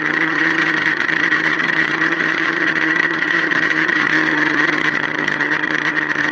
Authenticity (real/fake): fake